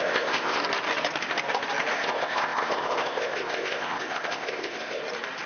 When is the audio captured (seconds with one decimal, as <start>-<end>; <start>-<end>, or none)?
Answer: 0.6-1.9; 5.0-5.5